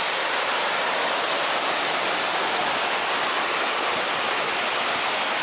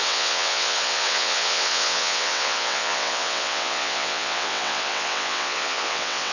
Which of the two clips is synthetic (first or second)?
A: second